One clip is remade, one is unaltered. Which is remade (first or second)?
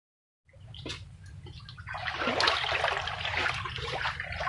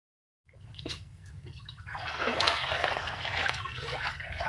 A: second